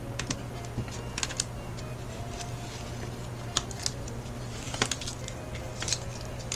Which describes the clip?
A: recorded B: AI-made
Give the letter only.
A